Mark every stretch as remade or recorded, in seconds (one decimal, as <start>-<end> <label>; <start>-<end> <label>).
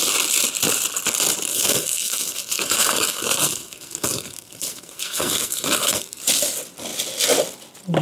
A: 0.0-1.5 recorded; 1.5-6.2 remade; 6.2-8.0 recorded